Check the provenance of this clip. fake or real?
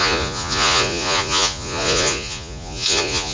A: fake